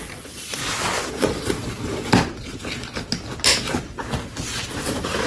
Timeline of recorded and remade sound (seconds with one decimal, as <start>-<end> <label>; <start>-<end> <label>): 0.0-0.6 remade; 0.6-1.1 recorded; 1.1-1.6 remade; 1.6-4.8 recorded; 4.8-5.3 remade